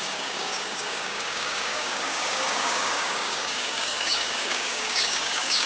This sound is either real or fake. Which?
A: fake